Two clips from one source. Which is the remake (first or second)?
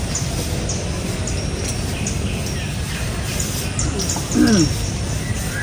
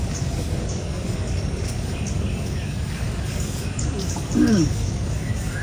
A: second